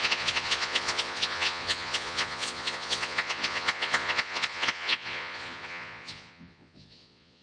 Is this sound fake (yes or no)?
yes